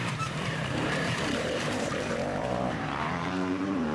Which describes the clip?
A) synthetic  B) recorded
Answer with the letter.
A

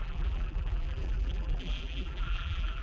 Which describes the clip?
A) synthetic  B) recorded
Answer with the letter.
A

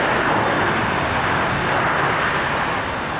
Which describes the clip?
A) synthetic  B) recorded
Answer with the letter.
B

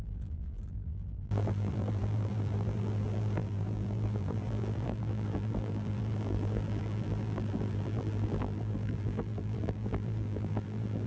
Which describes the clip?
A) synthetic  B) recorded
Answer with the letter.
A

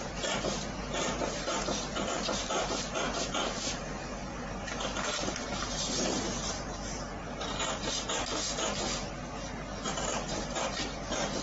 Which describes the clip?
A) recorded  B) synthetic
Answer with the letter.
B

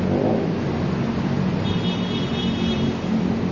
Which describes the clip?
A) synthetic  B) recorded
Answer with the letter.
B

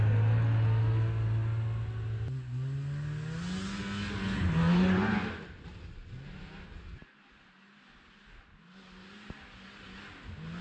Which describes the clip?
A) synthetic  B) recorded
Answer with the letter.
B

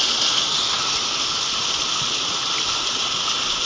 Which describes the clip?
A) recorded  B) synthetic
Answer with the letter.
A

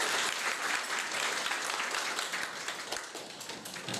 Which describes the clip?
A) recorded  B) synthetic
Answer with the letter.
A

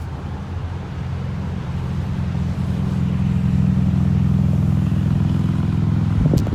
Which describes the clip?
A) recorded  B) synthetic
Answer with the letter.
A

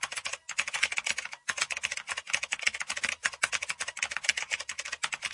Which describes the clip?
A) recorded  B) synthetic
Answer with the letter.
A